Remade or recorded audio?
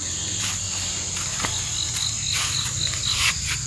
recorded